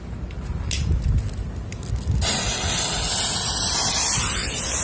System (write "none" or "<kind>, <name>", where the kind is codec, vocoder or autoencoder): none